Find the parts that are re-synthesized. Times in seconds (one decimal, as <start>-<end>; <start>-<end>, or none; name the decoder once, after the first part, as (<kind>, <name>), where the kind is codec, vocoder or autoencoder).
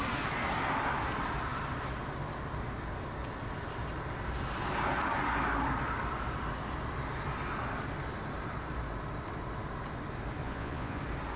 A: 10.4-11.0 (vocoder, Vocos)